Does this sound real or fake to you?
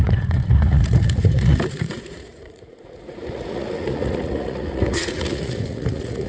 fake